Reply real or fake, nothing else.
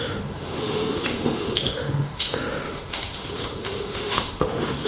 fake